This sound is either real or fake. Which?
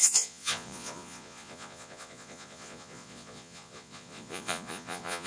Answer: fake